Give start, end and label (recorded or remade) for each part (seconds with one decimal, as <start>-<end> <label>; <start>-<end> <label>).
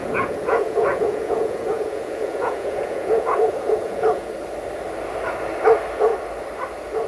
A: 0.0-4.3 remade; 4.3-7.1 recorded